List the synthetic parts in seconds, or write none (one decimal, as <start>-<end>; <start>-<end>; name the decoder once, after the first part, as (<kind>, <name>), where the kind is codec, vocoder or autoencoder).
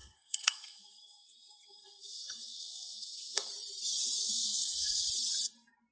0.0-3.5 (codec, SNAC); 4.2-5.1